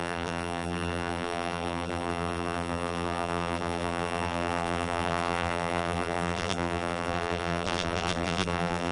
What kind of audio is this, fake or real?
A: fake